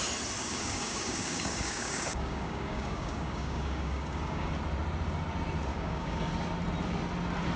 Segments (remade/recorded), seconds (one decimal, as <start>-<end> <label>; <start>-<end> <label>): 0.0-0.4 recorded; 0.4-4.5 remade; 4.5-5.7 recorded; 5.7-6.3 remade; 6.3-7.6 recorded